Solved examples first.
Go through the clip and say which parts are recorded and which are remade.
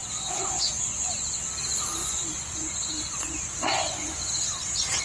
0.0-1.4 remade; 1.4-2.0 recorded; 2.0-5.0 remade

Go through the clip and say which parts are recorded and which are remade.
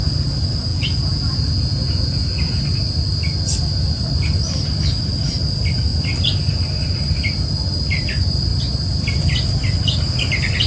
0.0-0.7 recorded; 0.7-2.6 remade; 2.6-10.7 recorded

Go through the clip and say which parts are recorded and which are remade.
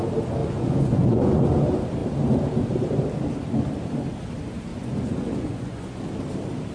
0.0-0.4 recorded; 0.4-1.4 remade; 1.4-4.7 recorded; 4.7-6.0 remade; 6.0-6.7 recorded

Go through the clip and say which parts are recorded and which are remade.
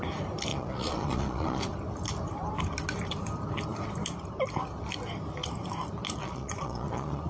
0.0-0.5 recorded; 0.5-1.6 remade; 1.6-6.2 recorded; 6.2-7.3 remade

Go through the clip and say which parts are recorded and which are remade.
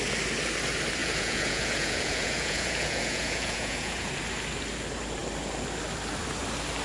0.0-1.0 recorded; 1.0-4.2 remade; 4.2-6.8 recorded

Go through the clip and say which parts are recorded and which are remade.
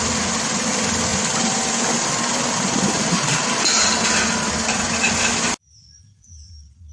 0.0-6.9 recorded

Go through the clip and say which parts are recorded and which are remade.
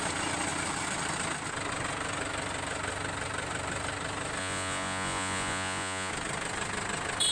0.0-4.4 recorded; 4.4-6.1 remade; 6.1-7.3 recorded